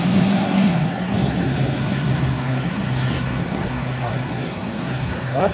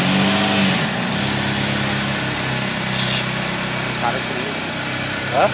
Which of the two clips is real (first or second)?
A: second